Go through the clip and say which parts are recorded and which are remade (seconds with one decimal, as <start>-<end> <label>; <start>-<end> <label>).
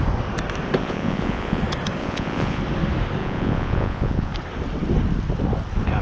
0.0-0.8 recorded; 0.8-1.6 remade; 1.6-2.0 recorded; 2.0-2.6 remade; 2.6-3.2 recorded; 3.2-4.3 remade; 4.3-6.0 recorded